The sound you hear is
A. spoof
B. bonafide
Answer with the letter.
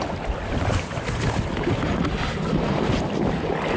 B